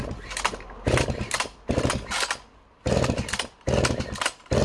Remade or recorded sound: recorded